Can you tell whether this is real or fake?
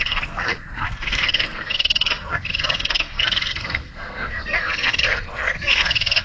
fake